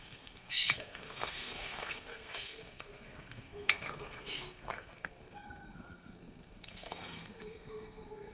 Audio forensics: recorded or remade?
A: remade